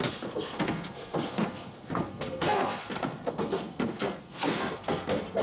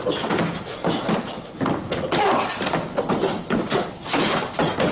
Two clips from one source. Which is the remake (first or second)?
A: first